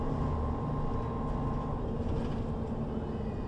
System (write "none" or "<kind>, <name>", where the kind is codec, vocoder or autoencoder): none